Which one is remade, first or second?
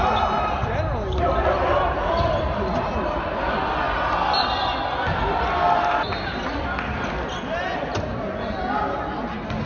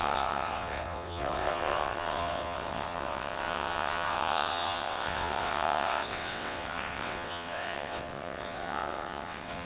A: second